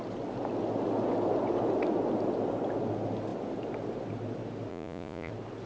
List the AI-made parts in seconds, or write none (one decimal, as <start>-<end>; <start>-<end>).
4.7-5.3